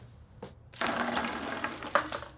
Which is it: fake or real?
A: real